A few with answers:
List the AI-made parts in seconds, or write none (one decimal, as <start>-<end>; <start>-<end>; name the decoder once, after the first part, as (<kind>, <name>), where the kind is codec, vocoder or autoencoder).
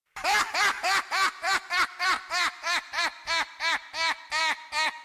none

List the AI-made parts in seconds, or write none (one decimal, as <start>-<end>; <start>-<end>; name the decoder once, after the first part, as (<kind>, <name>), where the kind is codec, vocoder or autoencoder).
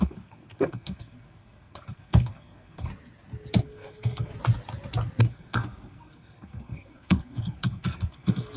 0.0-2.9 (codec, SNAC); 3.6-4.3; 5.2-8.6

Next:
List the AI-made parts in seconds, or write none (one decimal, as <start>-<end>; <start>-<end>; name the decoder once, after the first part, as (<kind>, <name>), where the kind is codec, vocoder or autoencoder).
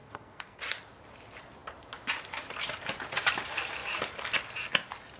0.0-0.6 (codec, SNAC)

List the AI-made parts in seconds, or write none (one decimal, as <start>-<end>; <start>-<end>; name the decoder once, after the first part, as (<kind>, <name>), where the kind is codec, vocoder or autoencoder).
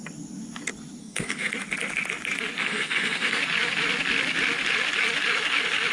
1.0-1.5 (codec, SNAC); 2.6-3.4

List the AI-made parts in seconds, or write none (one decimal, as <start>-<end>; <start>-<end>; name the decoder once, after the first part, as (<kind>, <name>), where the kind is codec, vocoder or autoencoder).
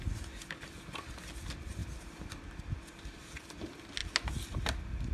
none